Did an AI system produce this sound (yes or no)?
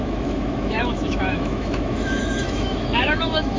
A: yes